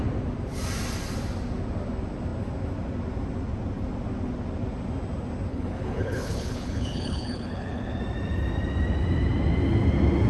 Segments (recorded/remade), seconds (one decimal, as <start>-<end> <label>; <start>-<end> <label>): 0.0-5.5 recorded; 5.5-8.0 remade; 8.0-10.3 recorded